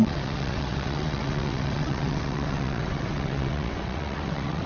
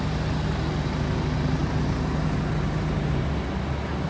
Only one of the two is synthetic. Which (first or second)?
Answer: first